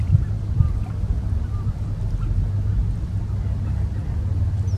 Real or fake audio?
real